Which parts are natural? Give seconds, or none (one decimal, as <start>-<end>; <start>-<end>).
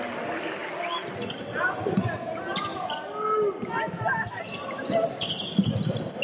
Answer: 0.0-6.2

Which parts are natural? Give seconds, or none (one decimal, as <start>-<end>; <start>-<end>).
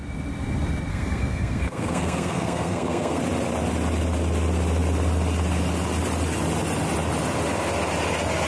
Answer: 0.0-0.9; 3.2-8.5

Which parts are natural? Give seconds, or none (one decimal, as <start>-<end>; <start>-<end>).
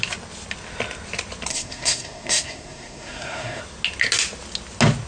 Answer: 0.0-1.5; 3.6-5.1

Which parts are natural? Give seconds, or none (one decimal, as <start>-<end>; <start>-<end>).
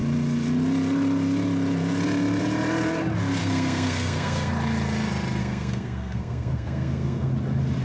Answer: 0.0-3.4; 4.5-5.4; 7.3-7.8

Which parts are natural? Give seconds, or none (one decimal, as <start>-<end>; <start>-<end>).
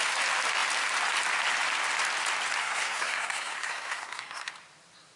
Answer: 0.0-2.6; 4.5-5.2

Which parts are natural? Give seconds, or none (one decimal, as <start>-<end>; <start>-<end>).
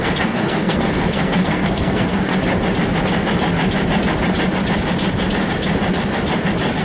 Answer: 2.3-6.8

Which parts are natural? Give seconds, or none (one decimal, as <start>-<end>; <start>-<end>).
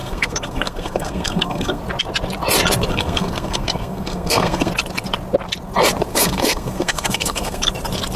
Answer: 1.8-2.9; 4.7-6.1; 7.7-8.2